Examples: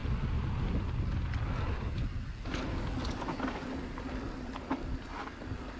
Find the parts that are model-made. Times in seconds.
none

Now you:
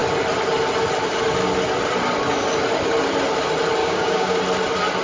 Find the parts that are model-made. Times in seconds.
3.8-4.4

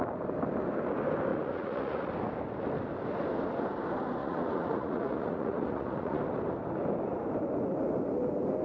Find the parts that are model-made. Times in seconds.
1.3-2.1; 4.2-6.2

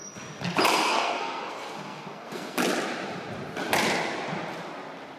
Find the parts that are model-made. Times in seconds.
0.7-2.6

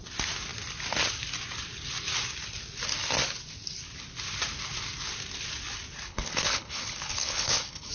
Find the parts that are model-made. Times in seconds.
6.1-7.9

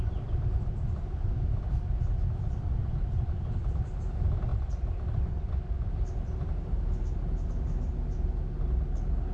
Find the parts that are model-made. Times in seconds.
4.5-5.5

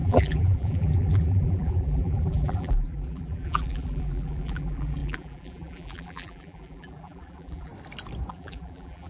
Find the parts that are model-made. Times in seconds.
0.0-7.7; 8.3-9.1